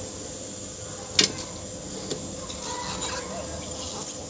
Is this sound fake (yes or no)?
no